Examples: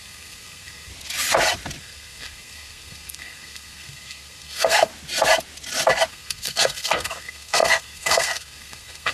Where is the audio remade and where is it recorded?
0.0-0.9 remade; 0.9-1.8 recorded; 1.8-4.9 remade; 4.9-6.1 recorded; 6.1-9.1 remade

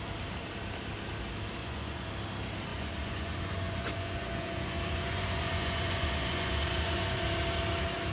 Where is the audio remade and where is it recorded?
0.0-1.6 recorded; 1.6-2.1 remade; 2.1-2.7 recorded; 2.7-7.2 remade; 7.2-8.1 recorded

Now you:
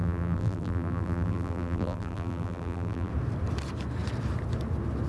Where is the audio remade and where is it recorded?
0.0-3.1 remade; 3.1-5.1 recorded

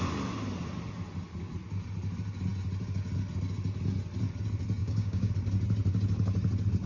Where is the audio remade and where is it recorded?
0.0-4.8 recorded; 4.8-5.3 remade; 5.3-6.9 recorded

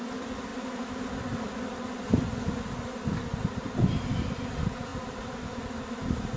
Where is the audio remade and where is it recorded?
0.0-6.4 recorded

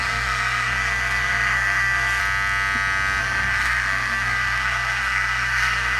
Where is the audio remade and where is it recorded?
0.0-2.2 remade; 2.2-3.2 recorded; 3.2-6.0 remade

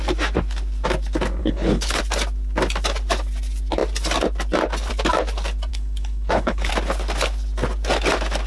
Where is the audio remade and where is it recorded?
0.0-1.4 recorded; 1.4-2.0 remade; 2.0-5.7 recorded; 5.7-6.7 remade; 6.7-8.5 recorded